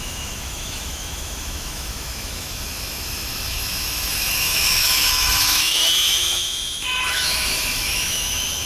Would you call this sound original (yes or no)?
no